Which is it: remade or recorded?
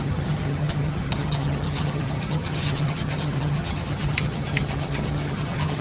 remade